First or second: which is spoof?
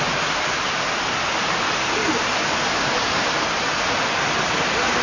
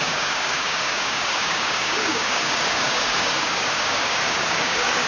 second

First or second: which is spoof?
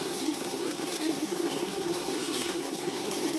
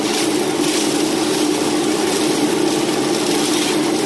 first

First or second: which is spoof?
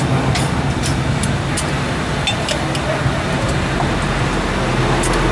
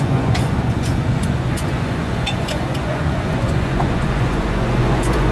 second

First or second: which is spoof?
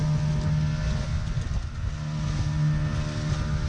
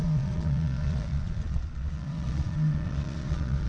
second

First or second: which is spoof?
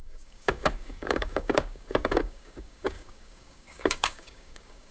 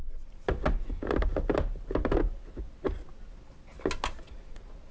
first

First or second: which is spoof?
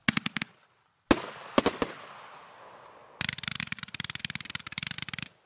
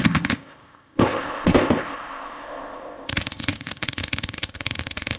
second